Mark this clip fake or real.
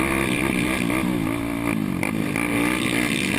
real